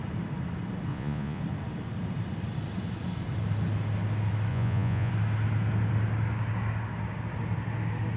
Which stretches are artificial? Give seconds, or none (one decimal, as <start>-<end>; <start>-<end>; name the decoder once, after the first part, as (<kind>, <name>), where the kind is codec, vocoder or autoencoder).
0.9-1.4 (vocoder, Vocos); 4.5-5.1